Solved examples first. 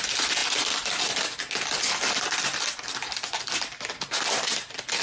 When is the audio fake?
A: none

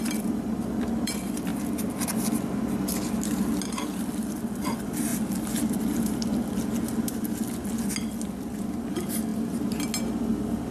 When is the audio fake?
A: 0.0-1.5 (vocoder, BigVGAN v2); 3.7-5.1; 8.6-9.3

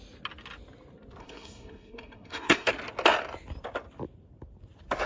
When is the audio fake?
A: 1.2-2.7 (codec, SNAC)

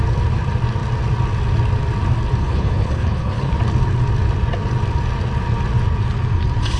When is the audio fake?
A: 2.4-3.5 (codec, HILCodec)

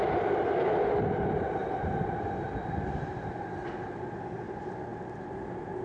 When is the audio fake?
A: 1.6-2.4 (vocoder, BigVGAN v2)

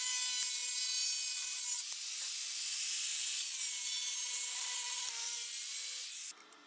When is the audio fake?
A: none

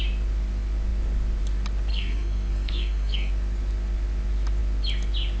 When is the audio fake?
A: 1.9-3.3 (codec, SNAC)